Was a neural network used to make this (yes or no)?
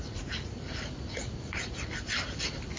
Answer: no